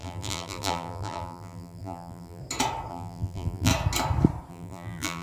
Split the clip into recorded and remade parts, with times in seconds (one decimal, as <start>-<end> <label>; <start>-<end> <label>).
0.0-2.4 remade; 2.4-2.9 recorded; 2.9-3.7 remade; 3.7-4.5 recorded; 4.5-5.2 remade